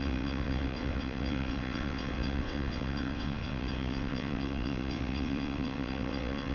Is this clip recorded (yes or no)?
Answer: no